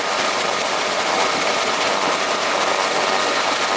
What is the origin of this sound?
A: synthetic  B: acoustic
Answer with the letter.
B